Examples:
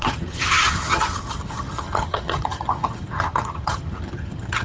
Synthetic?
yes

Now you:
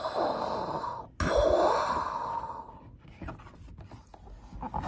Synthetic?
no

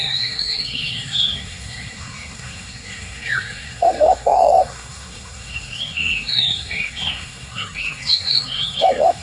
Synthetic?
yes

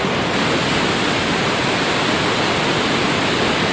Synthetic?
no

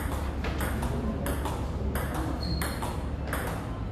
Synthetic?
no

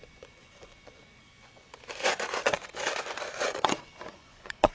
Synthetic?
yes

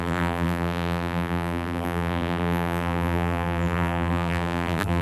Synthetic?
yes